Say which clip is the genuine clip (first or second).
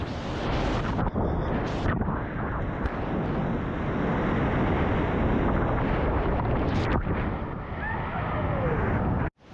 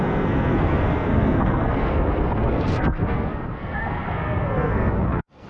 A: first